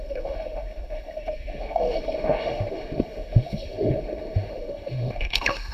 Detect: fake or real fake